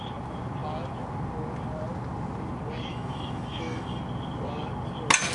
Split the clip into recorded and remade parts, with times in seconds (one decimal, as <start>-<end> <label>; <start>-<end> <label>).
0.0-2.9 recorded; 2.9-4.0 remade; 4.0-5.3 recorded